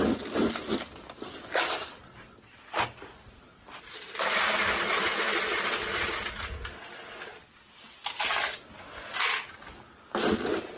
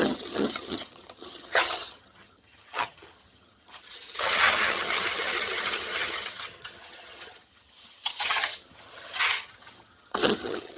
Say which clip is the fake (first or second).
second